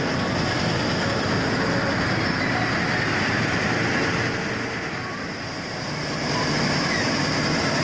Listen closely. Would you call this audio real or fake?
real